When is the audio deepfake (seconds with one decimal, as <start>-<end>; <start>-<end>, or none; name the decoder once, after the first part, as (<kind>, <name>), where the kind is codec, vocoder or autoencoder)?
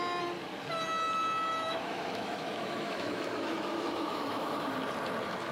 1.5-4.7 (autoencoder, DAC-VAE)